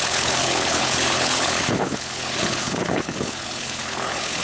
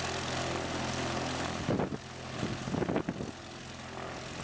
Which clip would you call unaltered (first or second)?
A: second